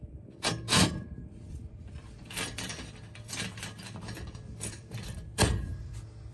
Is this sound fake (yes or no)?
yes